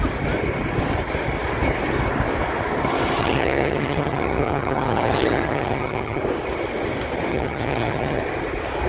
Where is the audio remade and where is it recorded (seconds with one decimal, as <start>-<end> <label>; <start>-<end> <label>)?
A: 0.0-3.2 recorded; 3.2-6.2 remade; 6.2-7.3 recorded; 7.3-8.2 remade; 8.2-8.9 recorded